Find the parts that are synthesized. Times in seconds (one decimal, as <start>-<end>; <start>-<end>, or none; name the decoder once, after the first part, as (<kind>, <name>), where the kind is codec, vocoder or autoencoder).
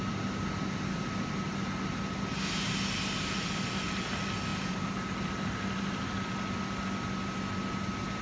none